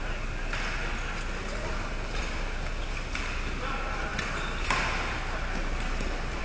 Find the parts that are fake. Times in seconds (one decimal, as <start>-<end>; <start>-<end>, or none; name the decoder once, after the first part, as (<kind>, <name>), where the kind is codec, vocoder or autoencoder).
none